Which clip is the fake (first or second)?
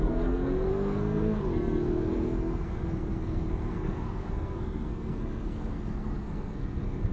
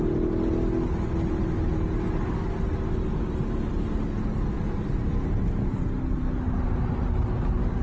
first